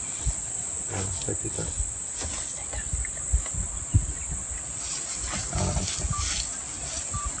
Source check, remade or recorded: recorded